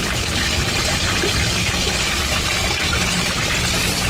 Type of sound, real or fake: real